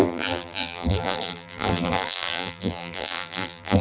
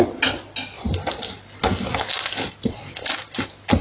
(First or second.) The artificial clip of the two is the first